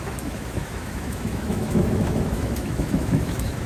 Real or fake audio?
fake